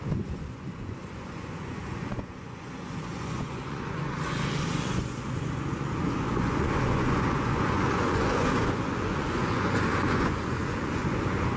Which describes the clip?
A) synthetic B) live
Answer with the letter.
A